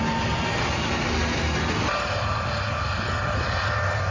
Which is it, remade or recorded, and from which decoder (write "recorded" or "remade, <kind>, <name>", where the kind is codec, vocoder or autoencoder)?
recorded